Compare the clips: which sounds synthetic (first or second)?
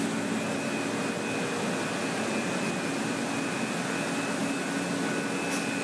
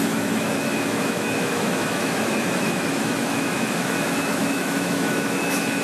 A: second